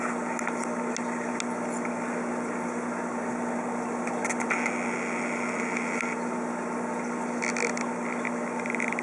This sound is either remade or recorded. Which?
recorded